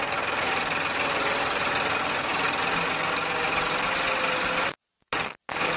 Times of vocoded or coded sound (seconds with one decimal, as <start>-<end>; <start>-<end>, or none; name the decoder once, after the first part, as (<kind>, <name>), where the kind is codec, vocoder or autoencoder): none